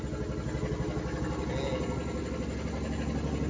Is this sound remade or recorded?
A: recorded